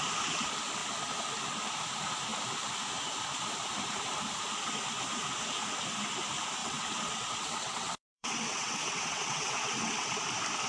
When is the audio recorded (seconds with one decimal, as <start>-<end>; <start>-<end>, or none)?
0.0-6.6; 10.2-10.7